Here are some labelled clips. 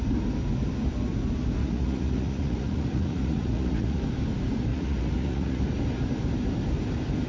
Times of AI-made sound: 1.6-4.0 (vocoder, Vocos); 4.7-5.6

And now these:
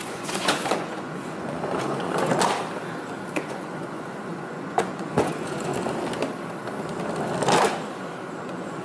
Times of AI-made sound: 0.0-2.3 (vocoder, Vocos); 3.3-5.7; 8.4-8.8